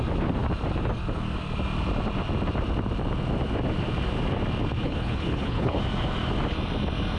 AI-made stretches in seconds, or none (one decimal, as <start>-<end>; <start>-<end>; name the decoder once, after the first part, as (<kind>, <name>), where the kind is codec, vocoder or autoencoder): 4.8-5.8 (codec, HILCodec)